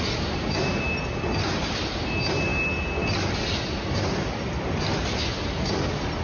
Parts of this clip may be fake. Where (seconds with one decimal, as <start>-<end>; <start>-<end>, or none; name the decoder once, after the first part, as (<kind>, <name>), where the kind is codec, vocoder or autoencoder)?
none